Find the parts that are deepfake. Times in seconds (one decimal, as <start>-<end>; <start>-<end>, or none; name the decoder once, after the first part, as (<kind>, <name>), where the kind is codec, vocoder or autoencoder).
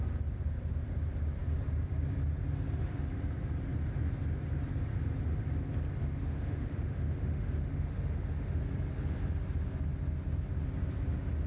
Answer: 6.0-8.6 (autoencoder, DAC-VAE)